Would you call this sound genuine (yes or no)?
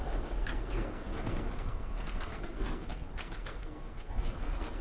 no